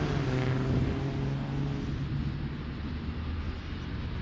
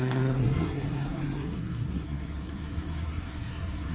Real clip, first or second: first